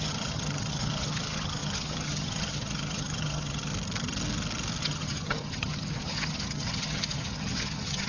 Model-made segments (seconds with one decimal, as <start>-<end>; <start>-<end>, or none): 0.0-3.7; 4.8-8.1